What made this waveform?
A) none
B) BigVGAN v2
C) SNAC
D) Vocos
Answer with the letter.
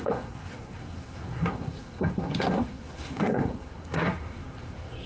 C